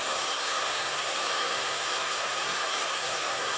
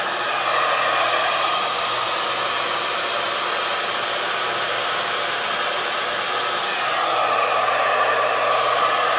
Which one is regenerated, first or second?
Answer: first